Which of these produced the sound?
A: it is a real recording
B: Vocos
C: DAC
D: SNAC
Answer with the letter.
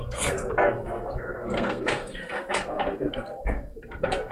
D